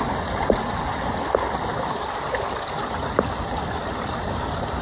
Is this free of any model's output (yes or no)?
yes